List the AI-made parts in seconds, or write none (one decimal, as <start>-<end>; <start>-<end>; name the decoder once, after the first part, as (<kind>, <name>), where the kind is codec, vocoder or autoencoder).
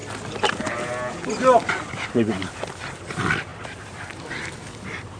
3.5-5.2 (vocoder, BigVGAN v2)